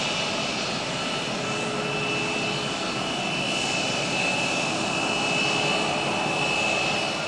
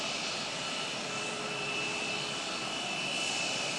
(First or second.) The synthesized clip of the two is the second